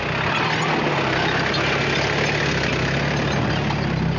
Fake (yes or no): no